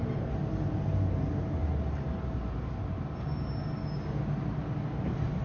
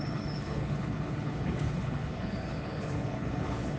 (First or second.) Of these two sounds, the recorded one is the first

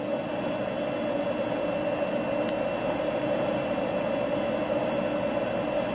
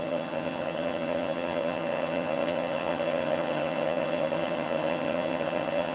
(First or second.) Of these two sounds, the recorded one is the first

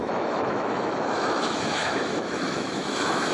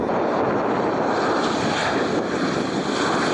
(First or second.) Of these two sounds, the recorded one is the second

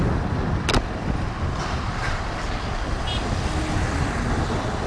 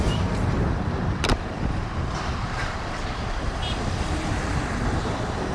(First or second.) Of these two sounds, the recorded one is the first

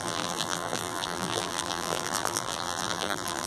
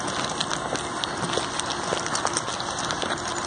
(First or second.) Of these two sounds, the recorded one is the second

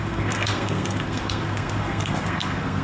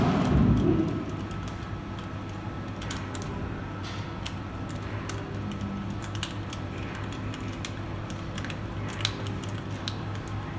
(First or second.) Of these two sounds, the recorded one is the second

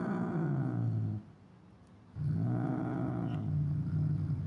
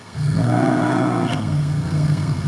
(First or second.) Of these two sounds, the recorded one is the first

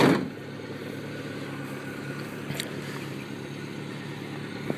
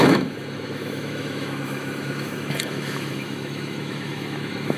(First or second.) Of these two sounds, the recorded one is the first